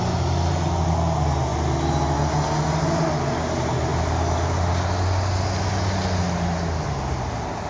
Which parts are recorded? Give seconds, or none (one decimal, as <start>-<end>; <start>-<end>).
0.0-7.7